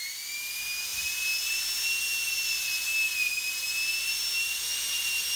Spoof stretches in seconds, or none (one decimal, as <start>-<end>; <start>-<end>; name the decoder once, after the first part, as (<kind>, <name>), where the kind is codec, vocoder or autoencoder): none